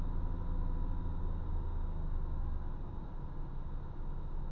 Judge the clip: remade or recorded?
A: recorded